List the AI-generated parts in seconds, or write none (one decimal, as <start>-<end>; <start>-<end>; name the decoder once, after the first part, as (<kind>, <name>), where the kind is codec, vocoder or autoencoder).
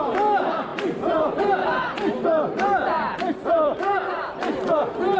0.0-5.2 (vocoder, BigVGAN v2)